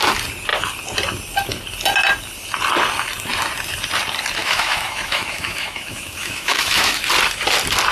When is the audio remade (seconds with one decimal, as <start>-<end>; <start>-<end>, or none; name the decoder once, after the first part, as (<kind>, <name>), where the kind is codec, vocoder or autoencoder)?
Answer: 4.4-7.0 (autoencoder, DAC-VAE)

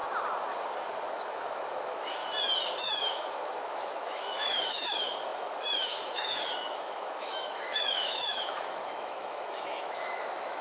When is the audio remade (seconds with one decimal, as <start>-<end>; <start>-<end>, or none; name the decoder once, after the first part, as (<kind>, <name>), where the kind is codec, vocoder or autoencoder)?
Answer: 1.1-2.2 (autoencoder, DAC-VAE); 2.8-10.6

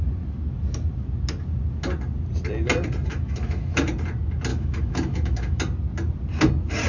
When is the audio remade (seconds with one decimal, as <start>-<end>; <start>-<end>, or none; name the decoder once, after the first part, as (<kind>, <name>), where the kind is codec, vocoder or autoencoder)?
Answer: 3.1-3.8 (autoencoder, DAC-VAE); 4.5-5.6

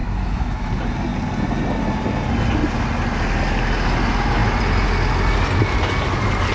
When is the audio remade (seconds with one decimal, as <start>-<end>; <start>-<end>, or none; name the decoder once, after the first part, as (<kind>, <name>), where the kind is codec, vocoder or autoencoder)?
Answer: 0.0-0.7 (autoencoder, DAC-VAE)

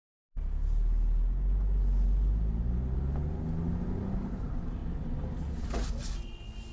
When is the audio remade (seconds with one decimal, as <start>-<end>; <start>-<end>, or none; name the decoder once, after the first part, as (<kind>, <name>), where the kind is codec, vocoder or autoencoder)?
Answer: none

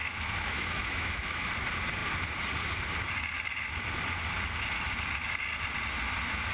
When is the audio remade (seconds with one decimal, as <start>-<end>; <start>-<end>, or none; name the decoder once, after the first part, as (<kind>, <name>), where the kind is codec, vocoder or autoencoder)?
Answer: 0.0-1.5 (autoencoder, DAC-VAE)

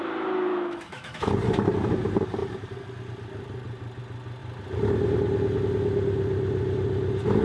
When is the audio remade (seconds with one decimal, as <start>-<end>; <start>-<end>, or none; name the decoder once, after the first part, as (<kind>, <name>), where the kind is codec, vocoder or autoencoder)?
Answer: 0.5-1.3 (autoencoder, DAC-VAE)

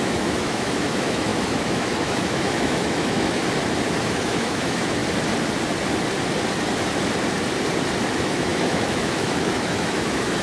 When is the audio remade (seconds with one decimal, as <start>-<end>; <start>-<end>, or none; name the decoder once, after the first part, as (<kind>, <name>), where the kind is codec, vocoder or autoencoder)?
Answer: 0.0-3.4 (autoencoder, DAC-VAE); 4.0-5.0; 8.1-10.4